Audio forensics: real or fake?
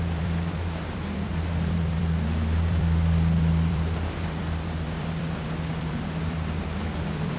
fake